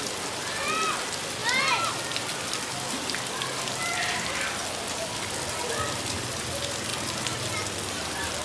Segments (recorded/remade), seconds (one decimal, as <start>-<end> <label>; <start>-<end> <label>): 0.0-8.4 recorded

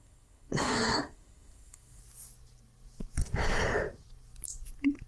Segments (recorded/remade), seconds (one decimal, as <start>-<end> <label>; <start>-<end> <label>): 0.0-2.0 remade; 2.0-5.1 recorded